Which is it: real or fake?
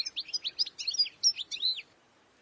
real